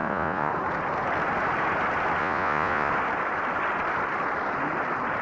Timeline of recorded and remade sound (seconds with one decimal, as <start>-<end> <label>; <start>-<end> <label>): 0.0-0.5 remade; 0.5-2.2 recorded; 2.2-2.9 remade; 2.9-5.2 recorded